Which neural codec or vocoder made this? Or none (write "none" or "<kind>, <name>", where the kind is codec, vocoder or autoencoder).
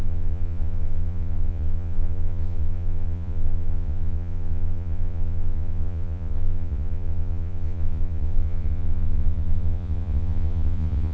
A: vocoder, Vocos